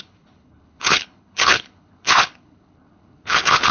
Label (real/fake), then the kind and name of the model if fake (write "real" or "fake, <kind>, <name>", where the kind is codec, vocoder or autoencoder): fake, codec, HILCodec